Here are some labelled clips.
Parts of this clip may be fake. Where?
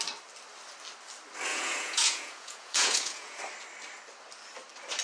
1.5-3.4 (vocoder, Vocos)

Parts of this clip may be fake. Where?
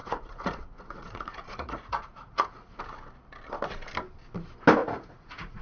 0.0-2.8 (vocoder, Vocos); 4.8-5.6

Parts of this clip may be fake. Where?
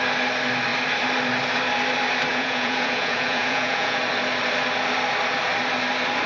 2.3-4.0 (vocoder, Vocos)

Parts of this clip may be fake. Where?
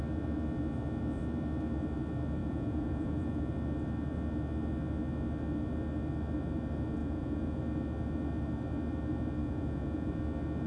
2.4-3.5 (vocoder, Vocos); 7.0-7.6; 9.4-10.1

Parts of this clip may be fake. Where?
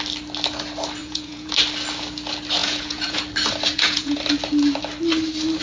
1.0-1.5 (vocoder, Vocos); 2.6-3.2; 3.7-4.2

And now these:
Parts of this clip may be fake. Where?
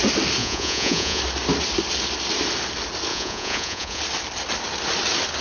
0.4-1.2 (vocoder, Vocos); 3.1-4.0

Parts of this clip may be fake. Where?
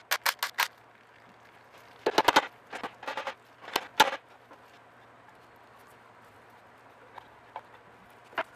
none